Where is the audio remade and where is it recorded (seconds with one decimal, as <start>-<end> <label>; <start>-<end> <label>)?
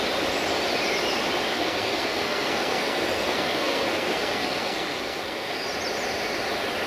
0.0-1.5 recorded; 1.5-5.6 remade; 5.6-6.9 recorded